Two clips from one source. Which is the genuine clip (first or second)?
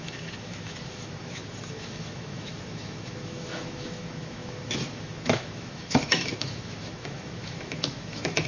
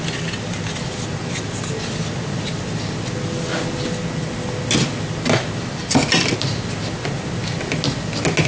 second